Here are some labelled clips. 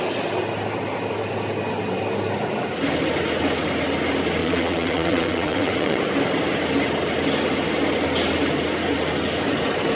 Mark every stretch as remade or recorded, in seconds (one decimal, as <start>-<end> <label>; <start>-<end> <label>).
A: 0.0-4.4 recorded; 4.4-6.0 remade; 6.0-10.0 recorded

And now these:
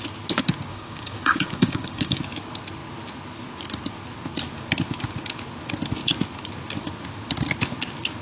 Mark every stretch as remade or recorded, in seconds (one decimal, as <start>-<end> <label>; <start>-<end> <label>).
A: 0.0-0.7 recorded; 0.7-2.2 remade; 2.2-8.2 recorded

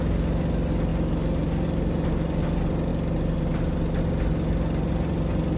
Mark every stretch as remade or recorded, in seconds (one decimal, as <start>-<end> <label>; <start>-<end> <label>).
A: 0.0-5.6 recorded

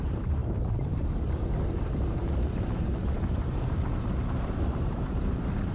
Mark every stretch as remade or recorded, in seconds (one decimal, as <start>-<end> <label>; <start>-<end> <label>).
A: 0.0-5.7 remade

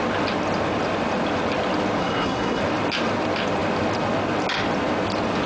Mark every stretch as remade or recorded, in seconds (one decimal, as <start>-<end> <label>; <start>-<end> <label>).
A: 0.0-2.0 recorded; 2.0-2.6 remade; 2.6-5.5 recorded

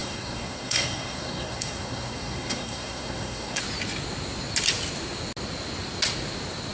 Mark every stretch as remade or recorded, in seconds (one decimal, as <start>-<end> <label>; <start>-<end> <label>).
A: 0.0-3.6 remade; 3.6-6.7 recorded

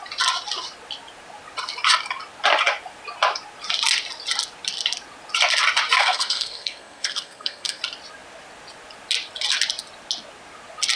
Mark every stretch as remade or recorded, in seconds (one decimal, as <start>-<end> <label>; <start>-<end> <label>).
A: 0.0-6.0 recorded; 6.0-7.8 remade; 7.8-11.0 recorded